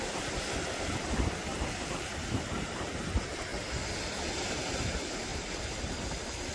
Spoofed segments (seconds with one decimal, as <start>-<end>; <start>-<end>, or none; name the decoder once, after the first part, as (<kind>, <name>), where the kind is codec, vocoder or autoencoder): 1.5-2.9 (vocoder, BigVGAN v2); 5.3-5.8